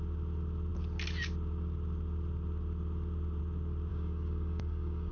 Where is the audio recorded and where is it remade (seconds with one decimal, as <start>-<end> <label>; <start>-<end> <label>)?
0.0-3.9 recorded; 3.9-5.1 remade